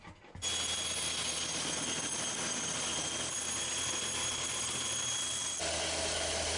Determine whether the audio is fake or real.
real